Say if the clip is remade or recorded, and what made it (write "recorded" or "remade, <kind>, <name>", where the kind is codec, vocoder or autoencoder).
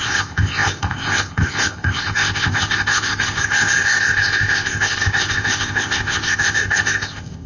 remade, codec, ZipCodec